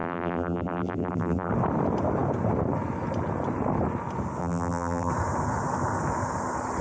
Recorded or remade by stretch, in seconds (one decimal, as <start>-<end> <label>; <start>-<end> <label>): 0.0-1.5 remade; 1.5-4.4 recorded; 4.4-5.1 remade; 5.1-6.8 recorded